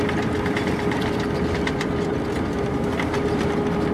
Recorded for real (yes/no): yes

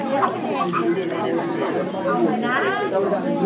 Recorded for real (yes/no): yes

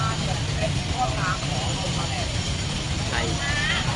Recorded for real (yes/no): yes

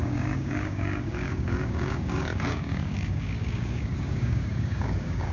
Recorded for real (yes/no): no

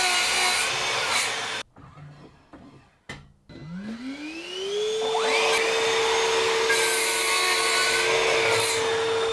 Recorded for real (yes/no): yes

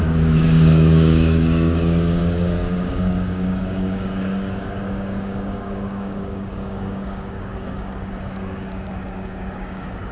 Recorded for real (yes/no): no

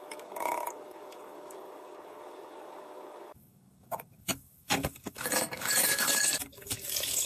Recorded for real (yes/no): no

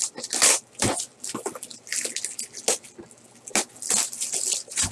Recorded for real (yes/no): yes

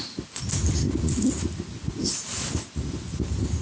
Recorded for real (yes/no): yes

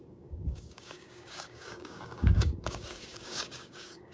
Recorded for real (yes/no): no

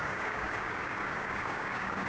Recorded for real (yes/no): no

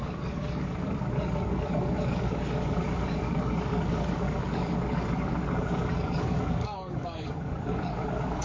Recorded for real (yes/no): no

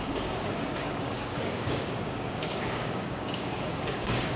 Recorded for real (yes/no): no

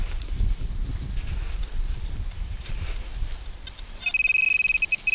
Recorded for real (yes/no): yes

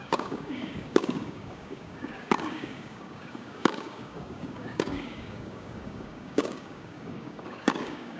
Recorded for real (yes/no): no